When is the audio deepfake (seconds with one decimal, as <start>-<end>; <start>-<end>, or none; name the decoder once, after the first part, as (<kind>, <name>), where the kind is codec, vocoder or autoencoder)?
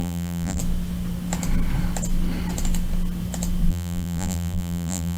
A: 0.0-0.6 (vocoder, BigVGAN v2); 3.7-5.2